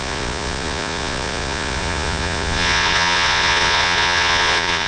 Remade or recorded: remade